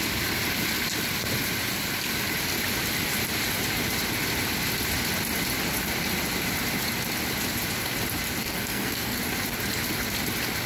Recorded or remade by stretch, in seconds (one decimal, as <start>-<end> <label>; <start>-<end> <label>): 0.0-8.4 recorded; 8.4-9.2 remade; 9.2-10.7 recorded